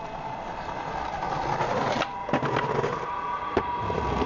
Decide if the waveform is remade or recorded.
recorded